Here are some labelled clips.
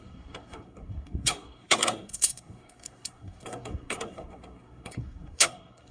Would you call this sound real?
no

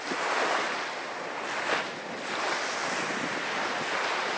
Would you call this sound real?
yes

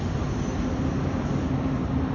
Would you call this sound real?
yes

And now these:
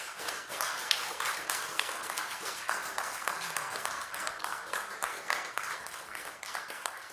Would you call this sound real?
no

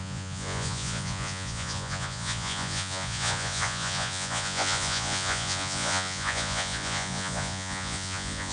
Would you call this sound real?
no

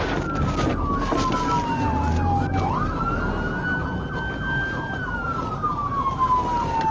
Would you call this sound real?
yes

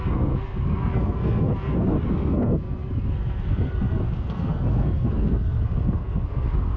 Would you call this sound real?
no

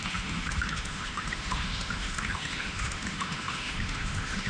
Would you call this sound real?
no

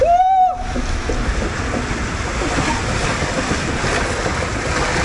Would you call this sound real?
yes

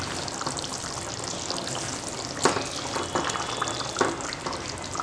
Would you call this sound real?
yes